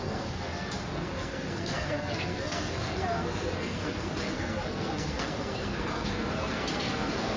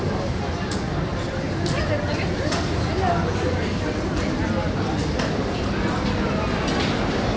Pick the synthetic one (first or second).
first